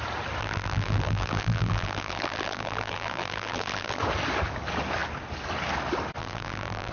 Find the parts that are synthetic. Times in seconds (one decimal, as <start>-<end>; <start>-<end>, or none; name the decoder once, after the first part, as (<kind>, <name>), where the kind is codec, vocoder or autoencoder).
0.4-4.0 (vocoder, BigVGAN v2); 6.2-6.9